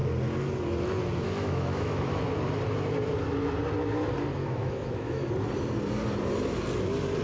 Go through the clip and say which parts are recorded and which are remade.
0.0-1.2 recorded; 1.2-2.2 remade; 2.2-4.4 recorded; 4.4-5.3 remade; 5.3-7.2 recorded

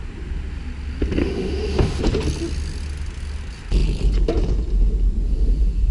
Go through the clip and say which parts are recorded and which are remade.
0.0-1.2 recorded; 1.2-2.0 remade; 2.0-5.9 recorded